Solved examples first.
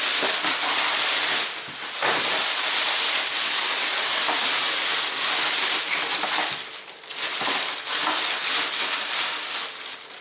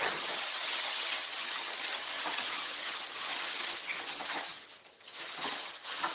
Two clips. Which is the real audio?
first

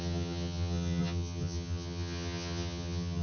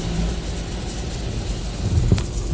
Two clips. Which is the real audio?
second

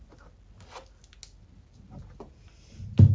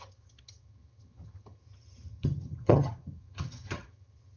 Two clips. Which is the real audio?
first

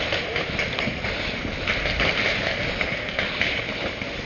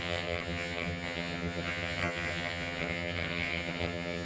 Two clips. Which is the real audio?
first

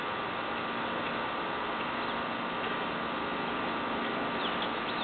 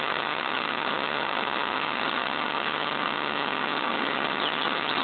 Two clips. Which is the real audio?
first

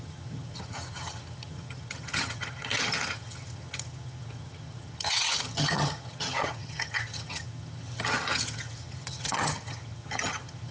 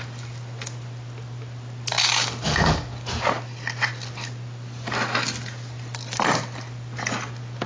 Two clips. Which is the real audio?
second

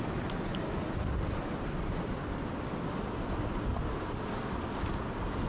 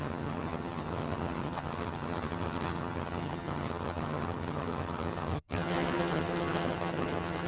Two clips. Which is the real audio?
first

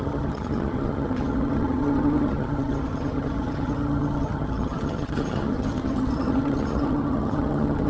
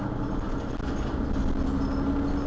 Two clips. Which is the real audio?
second